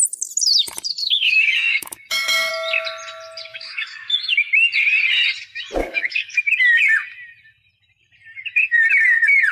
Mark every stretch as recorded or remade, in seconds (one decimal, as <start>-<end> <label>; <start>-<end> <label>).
0.0-1.0 recorded; 1.0-2.5 remade; 2.5-3.5 recorded; 3.5-4.5 remade; 4.5-5.8 recorded; 5.8-6.4 remade; 6.4-9.5 recorded